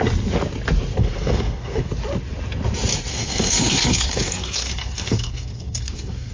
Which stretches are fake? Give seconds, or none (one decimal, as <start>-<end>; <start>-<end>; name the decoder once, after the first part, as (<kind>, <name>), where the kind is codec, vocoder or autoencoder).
1.0-1.9 (codec, SNAC); 3.1-6.3